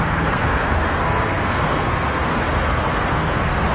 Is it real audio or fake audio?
fake